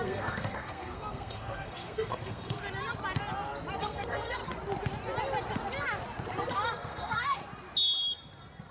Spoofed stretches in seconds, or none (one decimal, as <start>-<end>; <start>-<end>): 0.0-2.6; 3.8-4.4; 6.5-7.4